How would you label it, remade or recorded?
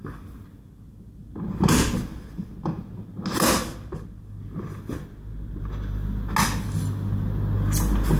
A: recorded